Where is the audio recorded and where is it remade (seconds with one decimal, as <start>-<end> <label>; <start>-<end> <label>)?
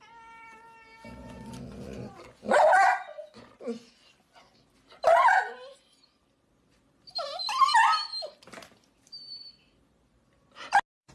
0.0-1.2 recorded; 1.2-3.5 remade; 3.5-11.1 recorded